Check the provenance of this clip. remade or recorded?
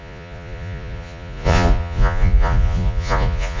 remade